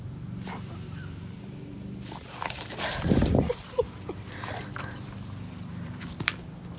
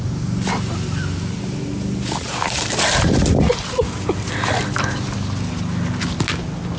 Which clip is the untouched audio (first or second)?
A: second